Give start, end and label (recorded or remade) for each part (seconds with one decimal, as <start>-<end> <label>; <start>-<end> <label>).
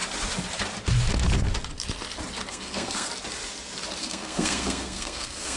0.0-2.5 recorded; 2.5-3.1 remade; 3.1-4.0 recorded; 4.0-5.6 remade